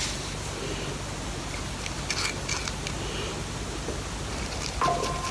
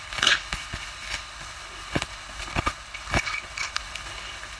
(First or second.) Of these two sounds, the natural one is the first